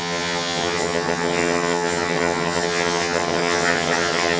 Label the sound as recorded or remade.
remade